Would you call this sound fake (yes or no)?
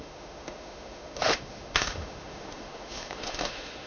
yes